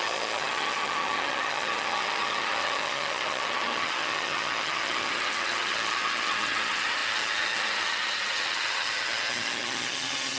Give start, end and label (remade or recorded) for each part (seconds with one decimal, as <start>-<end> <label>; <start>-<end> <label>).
0.0-10.4 remade